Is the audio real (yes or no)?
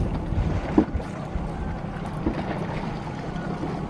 yes